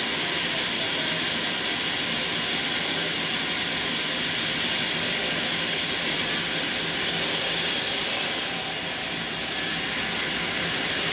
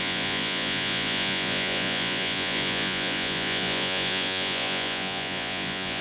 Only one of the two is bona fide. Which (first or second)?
first